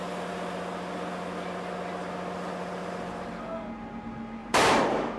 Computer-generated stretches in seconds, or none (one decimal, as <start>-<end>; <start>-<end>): 4.4-5.2